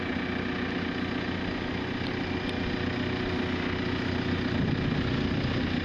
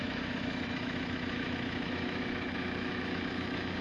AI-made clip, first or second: second